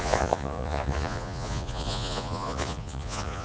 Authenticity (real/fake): fake